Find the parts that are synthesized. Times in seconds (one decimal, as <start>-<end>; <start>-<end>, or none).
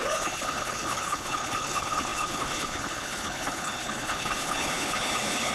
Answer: 0.0-5.5